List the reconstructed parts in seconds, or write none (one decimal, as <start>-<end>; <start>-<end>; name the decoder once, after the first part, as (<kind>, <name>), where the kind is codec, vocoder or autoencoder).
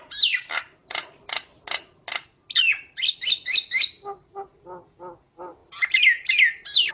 none